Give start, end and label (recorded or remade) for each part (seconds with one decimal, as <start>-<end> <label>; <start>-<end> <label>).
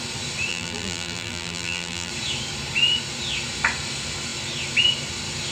0.0-0.5 recorded; 0.5-2.1 remade; 2.1-5.5 recorded